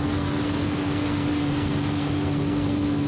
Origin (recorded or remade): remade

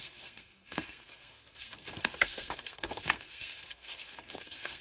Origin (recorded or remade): remade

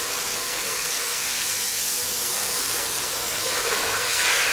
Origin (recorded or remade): remade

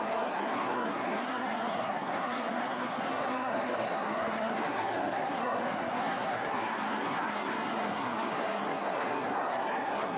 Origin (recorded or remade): remade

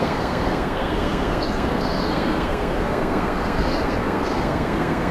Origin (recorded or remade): remade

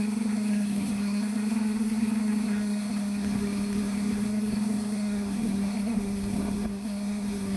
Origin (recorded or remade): remade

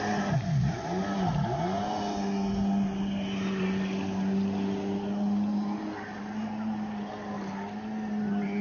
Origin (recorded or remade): recorded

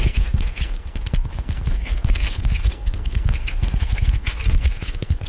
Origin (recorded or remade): remade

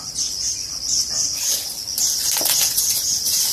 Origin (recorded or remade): recorded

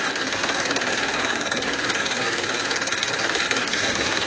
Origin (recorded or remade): remade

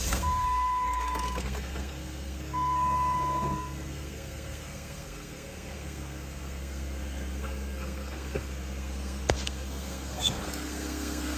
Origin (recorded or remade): remade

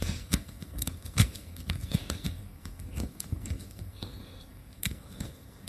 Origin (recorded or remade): remade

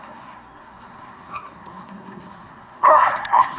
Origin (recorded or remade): remade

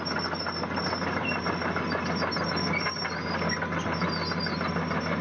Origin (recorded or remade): recorded